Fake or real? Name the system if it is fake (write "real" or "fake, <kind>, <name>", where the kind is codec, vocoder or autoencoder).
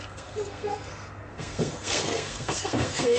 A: fake, codec, SNAC